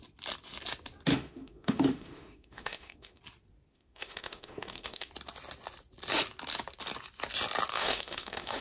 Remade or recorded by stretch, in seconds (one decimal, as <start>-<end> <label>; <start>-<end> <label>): 0.0-1.1 recorded; 1.1-3.2 remade; 3.2-3.7 recorded; 3.7-5.1 remade; 5.1-7.7 recorded; 7.7-8.6 remade